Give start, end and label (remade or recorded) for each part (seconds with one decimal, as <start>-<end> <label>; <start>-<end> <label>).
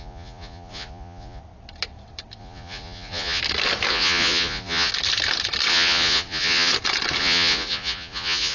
0.0-1.4 remade; 1.4-2.4 recorded; 2.4-3.4 remade; 3.4-3.9 recorded; 3.9-4.9 remade; 4.9-5.7 recorded; 5.7-6.7 remade; 6.7-7.2 recorded; 7.2-8.5 remade